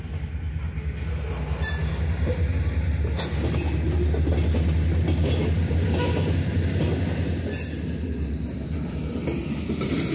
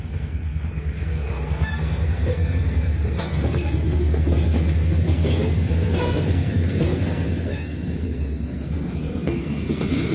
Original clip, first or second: first